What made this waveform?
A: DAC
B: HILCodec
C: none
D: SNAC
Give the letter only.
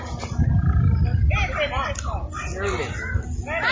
C